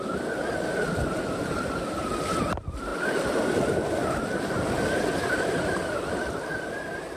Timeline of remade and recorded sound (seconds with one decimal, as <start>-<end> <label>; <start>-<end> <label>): 0.0-6.5 recorded; 6.5-7.2 remade